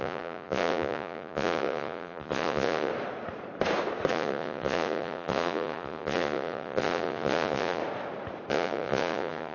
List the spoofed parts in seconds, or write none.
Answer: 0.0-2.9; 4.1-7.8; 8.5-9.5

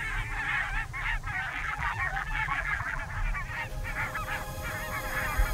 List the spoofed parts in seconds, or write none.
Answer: 1.5-3.0